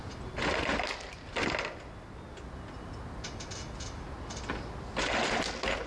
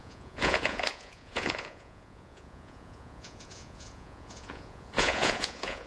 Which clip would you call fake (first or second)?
second